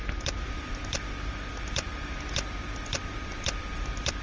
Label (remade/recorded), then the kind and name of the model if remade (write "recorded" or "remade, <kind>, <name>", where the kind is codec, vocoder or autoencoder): recorded